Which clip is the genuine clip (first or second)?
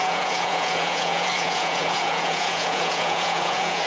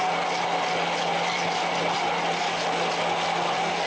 second